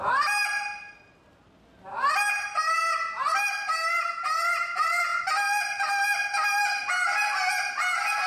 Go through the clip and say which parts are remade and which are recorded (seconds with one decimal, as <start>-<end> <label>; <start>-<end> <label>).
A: 0.0-8.3 recorded